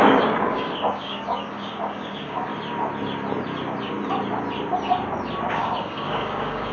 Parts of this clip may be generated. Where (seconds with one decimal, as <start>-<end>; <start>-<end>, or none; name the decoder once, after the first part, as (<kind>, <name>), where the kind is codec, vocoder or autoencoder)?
0.0-2.5 (codec, DAC); 5.5-6.7